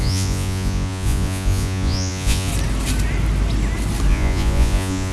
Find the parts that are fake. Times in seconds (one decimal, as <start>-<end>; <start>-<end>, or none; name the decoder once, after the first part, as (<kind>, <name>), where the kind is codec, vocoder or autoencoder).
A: 0.0-2.5 (vocoder, Vocos); 4.1-5.1